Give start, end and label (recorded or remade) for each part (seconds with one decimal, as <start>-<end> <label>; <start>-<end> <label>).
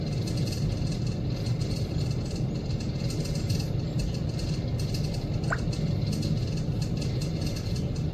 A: 0.0-8.1 recorded